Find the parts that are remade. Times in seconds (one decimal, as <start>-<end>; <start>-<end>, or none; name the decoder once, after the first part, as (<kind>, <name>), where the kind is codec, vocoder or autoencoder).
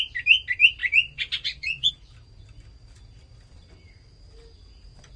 0.8-1.9 (vocoder, Vocos)